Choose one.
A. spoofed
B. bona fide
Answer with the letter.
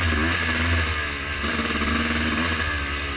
B